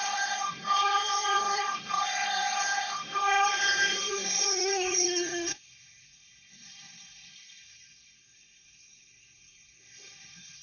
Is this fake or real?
fake